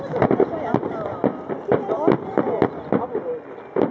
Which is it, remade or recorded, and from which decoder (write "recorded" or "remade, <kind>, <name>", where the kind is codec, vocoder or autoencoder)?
recorded